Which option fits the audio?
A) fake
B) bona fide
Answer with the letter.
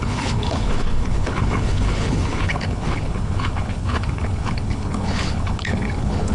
A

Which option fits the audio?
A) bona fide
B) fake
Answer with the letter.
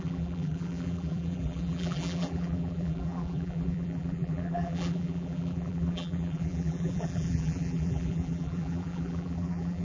B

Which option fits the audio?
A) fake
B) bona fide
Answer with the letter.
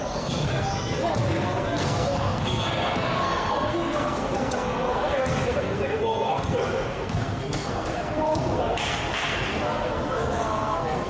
A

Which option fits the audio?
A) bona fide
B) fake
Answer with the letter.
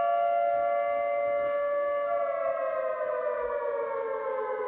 A